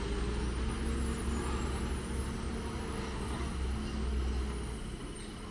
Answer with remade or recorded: recorded